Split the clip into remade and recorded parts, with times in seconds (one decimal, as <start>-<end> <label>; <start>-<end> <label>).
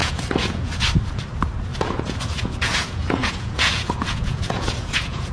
0.0-0.8 remade; 0.8-1.7 recorded; 1.7-5.3 remade